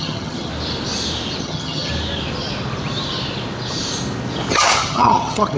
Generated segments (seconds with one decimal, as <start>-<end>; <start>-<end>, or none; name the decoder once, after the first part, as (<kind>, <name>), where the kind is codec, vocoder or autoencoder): 0.0-0.5 (vocoder, HiFi-GAN); 1.4-1.9; 4.5-5.6